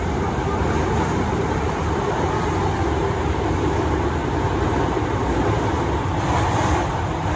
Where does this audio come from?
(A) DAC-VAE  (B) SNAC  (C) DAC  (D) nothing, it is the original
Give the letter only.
D